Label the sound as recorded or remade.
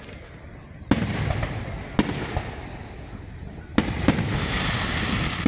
recorded